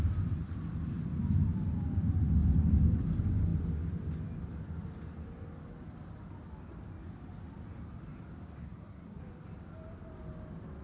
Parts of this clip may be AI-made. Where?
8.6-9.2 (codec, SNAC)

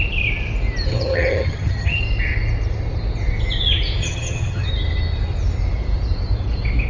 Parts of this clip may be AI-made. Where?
0.9-2.0 (vocoder, HiFi-GAN); 4.0-4.7